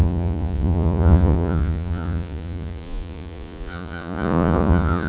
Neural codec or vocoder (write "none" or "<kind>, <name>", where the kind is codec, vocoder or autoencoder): vocoder, Vocos